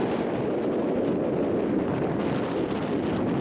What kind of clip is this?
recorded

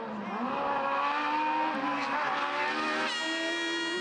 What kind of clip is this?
recorded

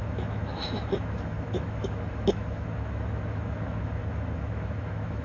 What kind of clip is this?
remade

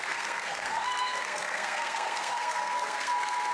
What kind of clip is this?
remade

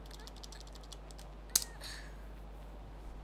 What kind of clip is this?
recorded